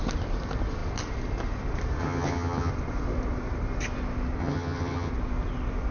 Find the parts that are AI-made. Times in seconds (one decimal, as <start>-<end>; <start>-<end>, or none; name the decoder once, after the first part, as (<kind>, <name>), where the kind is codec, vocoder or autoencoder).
2.0-2.7 (vocoder, HiFi-GAN); 4.4-5.1